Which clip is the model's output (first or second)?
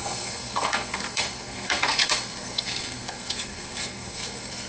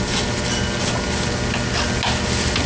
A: first